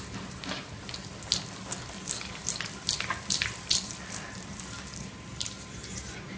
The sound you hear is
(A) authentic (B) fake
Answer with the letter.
A